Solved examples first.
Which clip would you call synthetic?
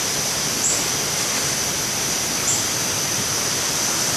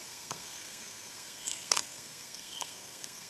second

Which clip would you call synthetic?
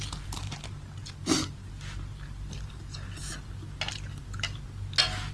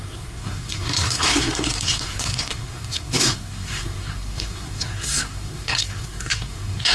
second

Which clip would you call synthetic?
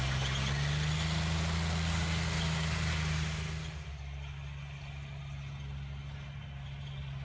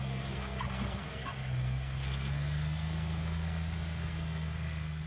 second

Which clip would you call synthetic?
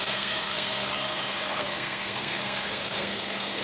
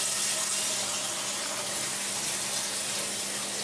first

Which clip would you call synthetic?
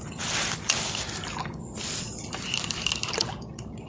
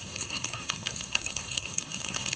second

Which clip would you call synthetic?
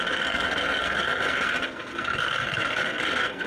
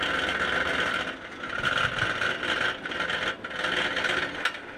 first